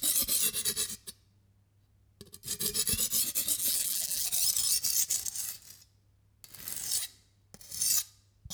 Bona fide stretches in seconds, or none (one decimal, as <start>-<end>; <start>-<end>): 0.0-3.6; 4.3-8.5